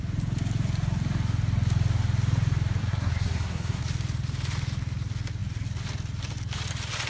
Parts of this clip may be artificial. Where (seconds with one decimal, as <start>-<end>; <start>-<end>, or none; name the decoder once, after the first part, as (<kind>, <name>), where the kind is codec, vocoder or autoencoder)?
2.8-3.8 (codec, SNAC)